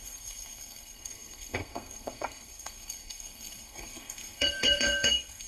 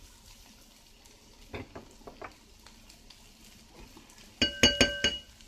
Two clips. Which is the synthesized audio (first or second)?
first